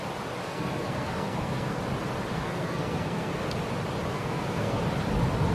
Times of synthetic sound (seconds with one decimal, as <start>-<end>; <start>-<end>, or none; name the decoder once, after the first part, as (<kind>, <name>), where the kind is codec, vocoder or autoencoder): 0.4-1.8 (codec, SNAC); 2.3-3.3; 4.1-4.8